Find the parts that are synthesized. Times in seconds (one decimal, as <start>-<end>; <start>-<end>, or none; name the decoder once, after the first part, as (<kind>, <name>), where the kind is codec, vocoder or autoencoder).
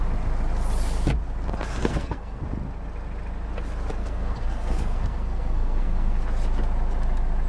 1.8-2.4 (codec, SNAC); 4.0-6.2